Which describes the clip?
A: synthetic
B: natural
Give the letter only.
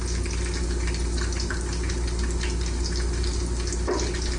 B